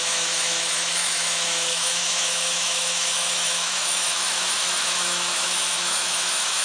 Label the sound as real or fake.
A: fake